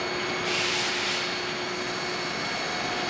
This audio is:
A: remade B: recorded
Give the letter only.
B